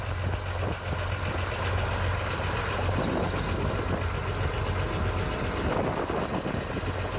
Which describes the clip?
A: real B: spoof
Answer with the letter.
A